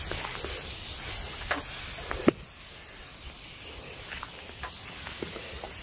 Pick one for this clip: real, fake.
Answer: real